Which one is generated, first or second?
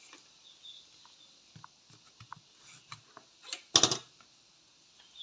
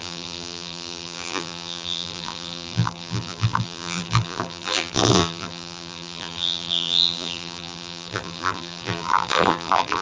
second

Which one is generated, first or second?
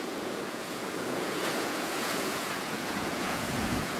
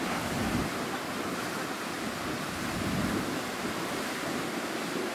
first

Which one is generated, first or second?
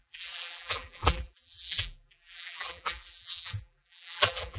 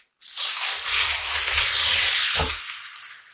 first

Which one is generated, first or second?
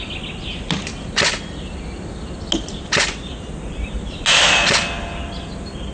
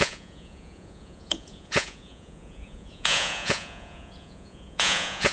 second